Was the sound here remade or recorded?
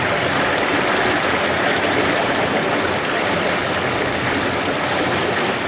recorded